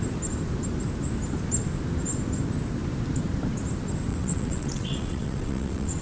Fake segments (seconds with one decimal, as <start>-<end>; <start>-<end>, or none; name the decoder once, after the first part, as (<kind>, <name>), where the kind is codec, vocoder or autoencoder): 4.1-6.0 (vocoder, WaveNeXt)